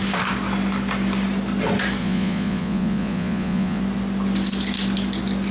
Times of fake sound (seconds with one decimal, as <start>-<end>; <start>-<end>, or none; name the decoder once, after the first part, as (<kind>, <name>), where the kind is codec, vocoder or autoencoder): 2.0-3.8 (vocoder, Vocos)